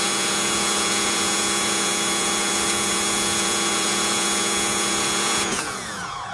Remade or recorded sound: remade